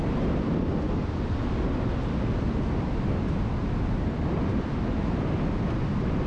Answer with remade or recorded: recorded